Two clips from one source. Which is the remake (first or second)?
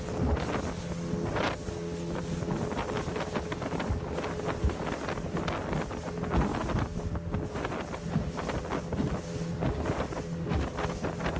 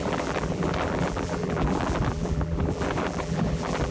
second